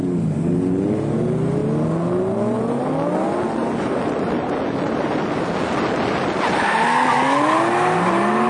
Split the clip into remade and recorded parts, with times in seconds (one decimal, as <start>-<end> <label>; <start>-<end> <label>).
0.0-8.5 recorded